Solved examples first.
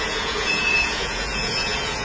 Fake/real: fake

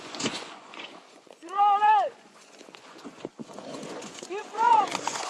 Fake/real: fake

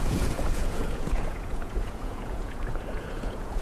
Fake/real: fake